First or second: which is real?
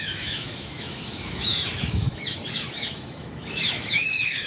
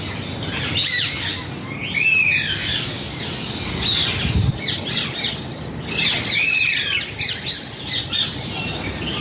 second